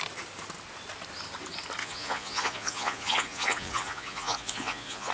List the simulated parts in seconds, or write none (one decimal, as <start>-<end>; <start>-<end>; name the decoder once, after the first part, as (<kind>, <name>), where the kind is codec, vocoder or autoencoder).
1.8-5.1 (vocoder, Vocos)